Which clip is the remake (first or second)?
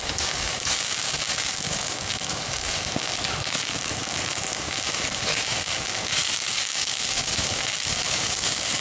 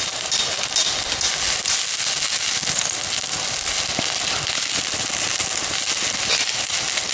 first